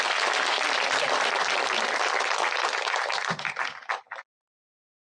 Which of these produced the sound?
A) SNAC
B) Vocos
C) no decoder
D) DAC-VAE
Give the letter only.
C